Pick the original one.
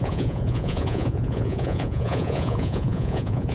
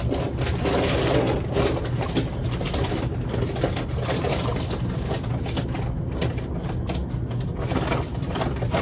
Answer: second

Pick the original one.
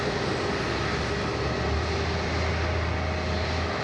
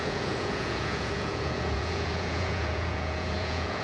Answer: first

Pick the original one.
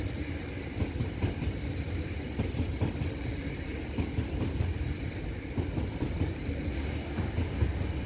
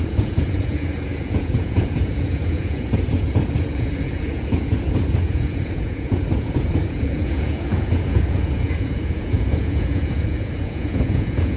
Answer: first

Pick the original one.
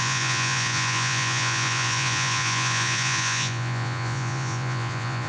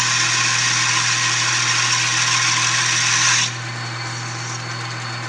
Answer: second